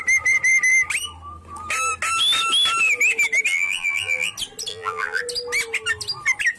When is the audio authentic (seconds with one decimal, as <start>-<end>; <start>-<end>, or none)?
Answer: 0.0-3.5; 4.3-4.7; 5.2-6.6